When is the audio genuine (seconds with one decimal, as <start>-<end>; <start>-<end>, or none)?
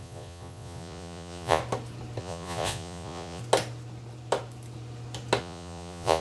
1.6-2.2; 3.4-5.4